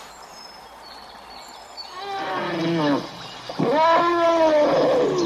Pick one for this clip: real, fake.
real